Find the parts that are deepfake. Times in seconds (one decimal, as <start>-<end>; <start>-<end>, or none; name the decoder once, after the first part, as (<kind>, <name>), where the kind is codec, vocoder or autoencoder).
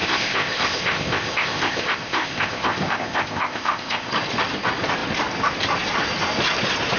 0.0-4.1 (codec, ZipCodec)